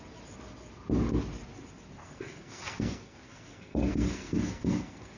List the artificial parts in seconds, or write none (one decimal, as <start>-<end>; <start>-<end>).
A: 2.0-5.2

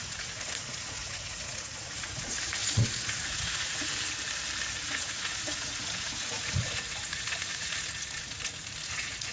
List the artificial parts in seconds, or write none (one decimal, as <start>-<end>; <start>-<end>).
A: 0.0-3.9; 4.8-9.3